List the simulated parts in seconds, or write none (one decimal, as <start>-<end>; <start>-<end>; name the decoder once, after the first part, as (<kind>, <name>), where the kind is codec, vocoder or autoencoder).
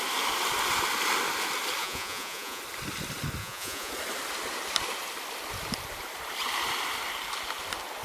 1.8-2.6 (vocoder, Vocos); 3.4-3.9